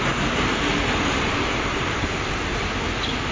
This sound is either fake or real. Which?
real